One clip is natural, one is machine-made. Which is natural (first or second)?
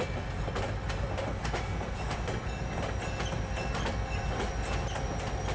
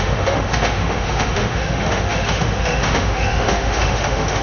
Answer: first